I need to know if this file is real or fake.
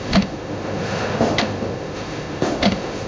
fake